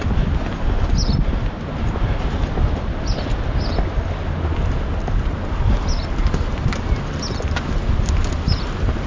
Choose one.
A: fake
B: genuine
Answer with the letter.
B